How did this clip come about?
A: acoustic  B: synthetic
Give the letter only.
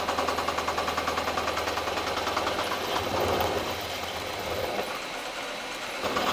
A